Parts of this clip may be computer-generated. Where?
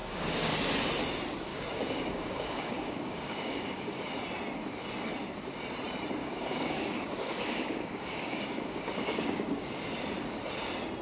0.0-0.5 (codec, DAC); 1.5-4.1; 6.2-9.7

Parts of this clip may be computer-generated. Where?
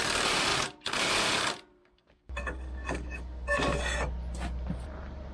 1.8-3.8 (codec, DAC)